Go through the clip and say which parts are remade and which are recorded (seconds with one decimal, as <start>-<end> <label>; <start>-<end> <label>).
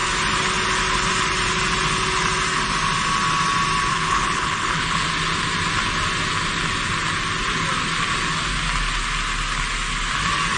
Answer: 0.0-3.9 recorded; 3.9-5.1 remade; 5.1-10.6 recorded